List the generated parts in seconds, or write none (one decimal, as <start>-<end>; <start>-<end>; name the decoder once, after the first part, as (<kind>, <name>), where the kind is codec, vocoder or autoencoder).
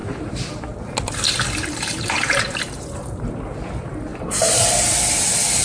0.0-0.9 (vocoder, BigVGAN v2); 1.6-3.3; 4.1-4.6